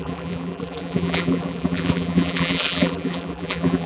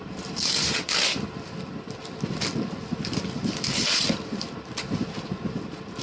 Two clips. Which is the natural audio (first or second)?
second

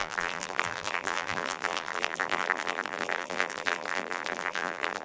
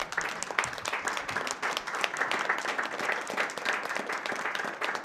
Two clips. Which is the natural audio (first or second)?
second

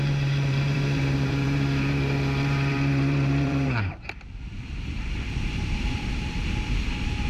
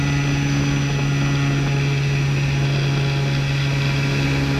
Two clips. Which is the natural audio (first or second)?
second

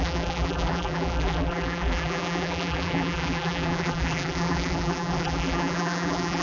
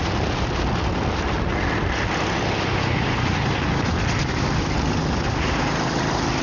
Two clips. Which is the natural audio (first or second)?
second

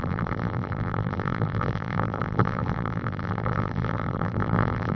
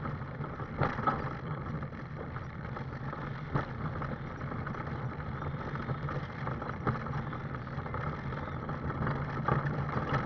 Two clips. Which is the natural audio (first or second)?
second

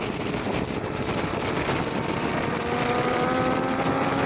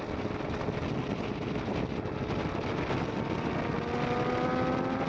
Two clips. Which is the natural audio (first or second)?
second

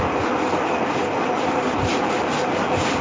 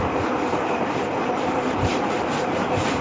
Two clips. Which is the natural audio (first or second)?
first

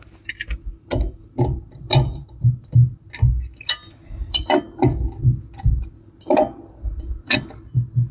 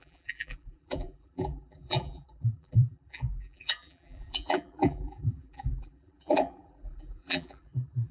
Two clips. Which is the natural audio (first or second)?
first